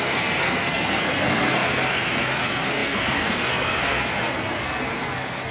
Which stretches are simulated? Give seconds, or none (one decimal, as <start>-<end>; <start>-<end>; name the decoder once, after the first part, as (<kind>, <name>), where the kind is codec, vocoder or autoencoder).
0.0-5.5 (codec, SNAC)